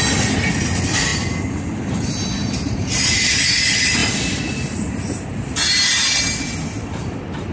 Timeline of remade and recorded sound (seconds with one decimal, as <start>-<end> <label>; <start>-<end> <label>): 0.0-7.5 recorded